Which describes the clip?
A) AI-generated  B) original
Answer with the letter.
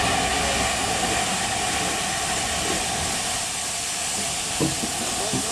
B